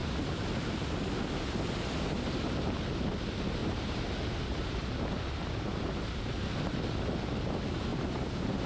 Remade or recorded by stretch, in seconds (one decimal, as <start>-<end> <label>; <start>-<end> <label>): 0.0-3.6 recorded; 3.6-7.1 remade; 7.1-7.9 recorded; 7.9-8.7 remade

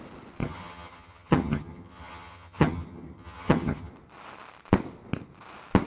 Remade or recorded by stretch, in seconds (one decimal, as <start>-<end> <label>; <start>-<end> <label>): 0.0-0.4 recorded; 0.4-3.9 remade; 3.9-5.9 recorded